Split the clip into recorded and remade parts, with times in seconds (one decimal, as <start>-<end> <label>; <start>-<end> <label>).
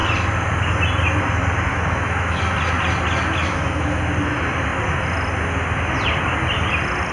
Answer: 0.0-1.7 recorded; 1.7-2.4 remade; 2.4-3.4 recorded; 3.4-4.0 remade; 4.0-7.1 recorded